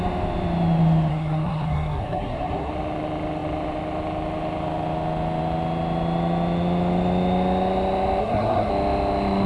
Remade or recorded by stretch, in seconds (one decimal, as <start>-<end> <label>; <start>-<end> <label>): 0.0-1.1 recorded; 1.1-2.7 remade; 2.7-8.2 recorded; 8.2-8.7 remade; 8.7-9.5 recorded